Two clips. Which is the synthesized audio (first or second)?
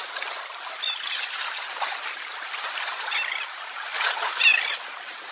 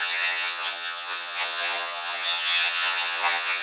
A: second